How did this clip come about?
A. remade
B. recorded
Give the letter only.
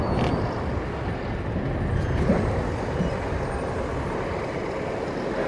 B